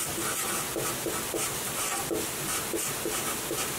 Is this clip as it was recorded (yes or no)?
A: yes